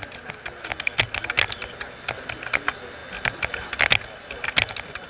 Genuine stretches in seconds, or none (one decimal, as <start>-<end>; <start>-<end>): 0.0-5.1